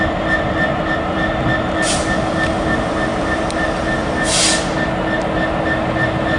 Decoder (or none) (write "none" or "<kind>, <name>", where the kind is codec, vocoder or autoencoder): none